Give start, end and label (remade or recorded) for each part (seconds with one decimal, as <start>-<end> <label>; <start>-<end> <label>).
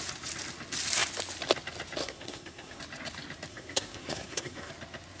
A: 0.0-2.0 recorded; 2.0-2.8 remade; 2.8-3.5 recorded; 3.5-4.7 remade; 4.7-5.2 recorded